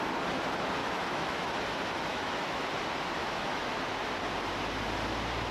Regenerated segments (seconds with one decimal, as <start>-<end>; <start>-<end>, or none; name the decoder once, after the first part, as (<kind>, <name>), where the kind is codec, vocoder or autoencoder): 0.8-1.5 (autoencoder, DAC-VAE); 2.1-2.6; 3.2-3.7